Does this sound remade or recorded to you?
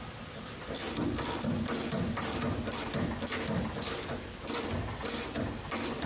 recorded